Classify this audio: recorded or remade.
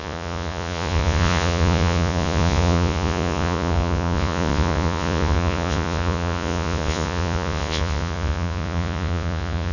remade